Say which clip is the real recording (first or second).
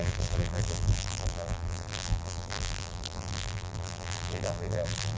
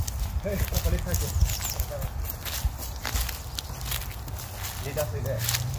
second